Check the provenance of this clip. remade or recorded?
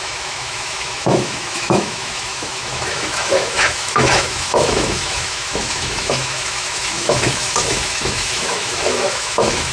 remade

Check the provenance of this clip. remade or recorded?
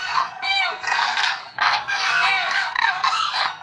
remade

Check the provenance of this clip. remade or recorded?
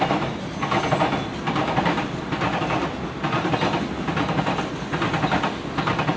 recorded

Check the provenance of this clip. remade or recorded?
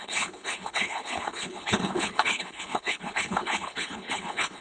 remade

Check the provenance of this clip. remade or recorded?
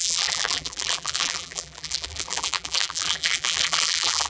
remade